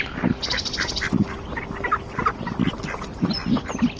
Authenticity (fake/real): real